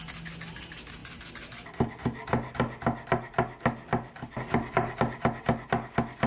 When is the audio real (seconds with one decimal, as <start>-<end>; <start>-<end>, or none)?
0.0-6.3